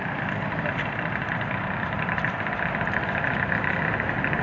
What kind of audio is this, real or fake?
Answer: fake